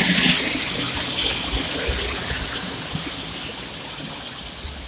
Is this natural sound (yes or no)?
yes